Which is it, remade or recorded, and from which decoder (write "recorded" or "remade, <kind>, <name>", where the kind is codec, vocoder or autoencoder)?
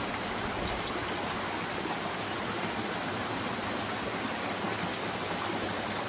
recorded